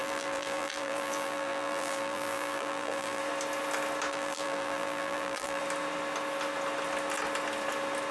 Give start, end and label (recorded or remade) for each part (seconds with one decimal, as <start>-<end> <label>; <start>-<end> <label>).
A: 0.0-3.2 remade; 3.2-4.1 recorded; 4.1-5.6 remade; 5.6-8.1 recorded